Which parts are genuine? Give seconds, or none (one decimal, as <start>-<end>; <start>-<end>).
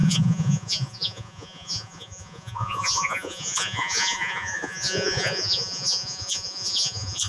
none